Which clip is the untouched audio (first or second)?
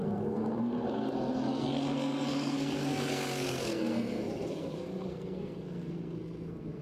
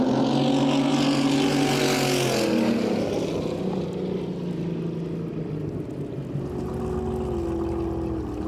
second